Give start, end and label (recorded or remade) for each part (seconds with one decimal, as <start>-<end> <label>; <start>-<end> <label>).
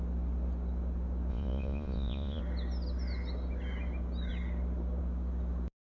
0.0-1.3 recorded; 1.3-2.4 remade; 2.4-5.9 recorded